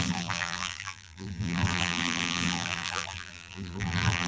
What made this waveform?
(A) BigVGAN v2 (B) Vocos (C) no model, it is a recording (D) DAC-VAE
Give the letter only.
A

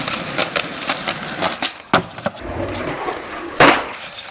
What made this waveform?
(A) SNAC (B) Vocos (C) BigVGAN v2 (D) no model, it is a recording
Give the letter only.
D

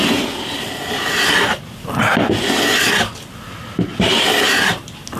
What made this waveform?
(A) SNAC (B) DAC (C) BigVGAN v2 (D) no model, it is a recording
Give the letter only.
D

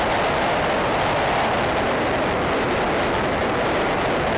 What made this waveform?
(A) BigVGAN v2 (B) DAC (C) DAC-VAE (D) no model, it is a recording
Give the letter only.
D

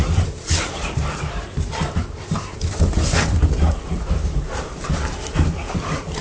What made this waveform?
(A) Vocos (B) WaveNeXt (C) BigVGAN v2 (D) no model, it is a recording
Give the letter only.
C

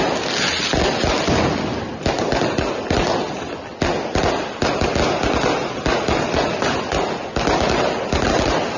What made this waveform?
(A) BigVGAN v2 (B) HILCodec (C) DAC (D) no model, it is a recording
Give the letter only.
D